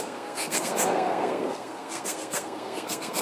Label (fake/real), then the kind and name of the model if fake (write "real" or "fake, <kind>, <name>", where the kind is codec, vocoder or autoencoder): fake, codec, SNAC